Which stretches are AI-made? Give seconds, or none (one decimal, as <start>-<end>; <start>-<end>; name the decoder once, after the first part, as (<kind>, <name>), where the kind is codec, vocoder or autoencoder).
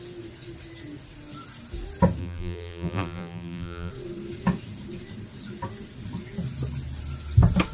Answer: 2.2-3.9 (vocoder, BigVGAN v2)